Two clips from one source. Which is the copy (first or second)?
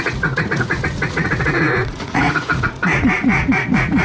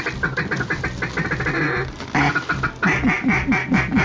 first